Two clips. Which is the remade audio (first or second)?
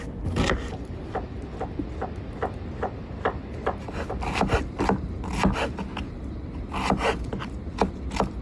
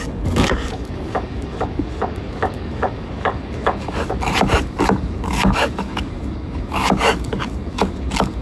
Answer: second